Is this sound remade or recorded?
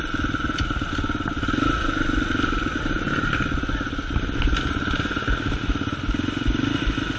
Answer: recorded